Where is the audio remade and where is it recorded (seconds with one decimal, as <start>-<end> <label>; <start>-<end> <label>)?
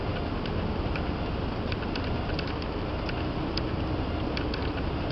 0.0-5.1 recorded